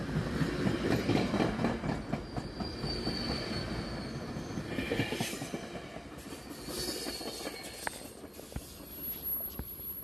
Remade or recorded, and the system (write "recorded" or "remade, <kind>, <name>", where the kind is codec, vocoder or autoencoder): recorded